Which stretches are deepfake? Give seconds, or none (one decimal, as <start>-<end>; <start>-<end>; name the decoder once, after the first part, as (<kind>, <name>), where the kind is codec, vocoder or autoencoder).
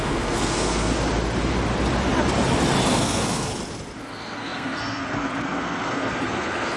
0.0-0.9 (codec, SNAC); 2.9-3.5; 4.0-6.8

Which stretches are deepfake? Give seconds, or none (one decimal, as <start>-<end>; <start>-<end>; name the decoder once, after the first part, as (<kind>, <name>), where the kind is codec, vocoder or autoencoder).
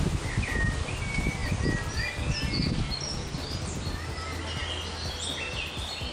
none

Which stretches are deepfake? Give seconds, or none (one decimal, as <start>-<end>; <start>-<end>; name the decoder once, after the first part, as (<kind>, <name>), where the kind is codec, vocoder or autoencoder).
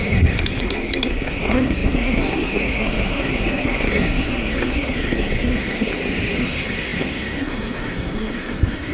0.0-5.9 (codec, SNAC); 6.4-8.9